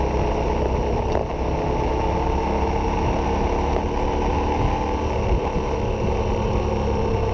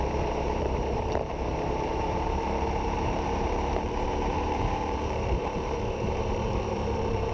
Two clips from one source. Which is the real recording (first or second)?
first